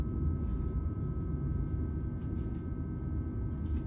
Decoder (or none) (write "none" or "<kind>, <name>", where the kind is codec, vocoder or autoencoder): none